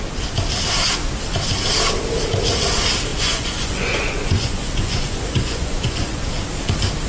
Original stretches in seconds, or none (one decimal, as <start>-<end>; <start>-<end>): 0.0-3.1; 6.2-7.1